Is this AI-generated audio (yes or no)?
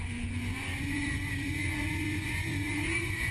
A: yes